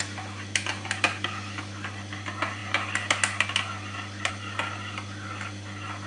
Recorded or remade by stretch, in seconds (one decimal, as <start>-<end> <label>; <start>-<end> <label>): 0.0-6.1 recorded